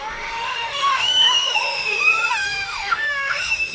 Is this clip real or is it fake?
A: fake